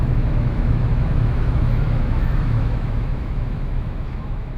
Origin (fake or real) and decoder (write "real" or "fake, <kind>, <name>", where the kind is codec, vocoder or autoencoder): fake, autoencoder, DAC-VAE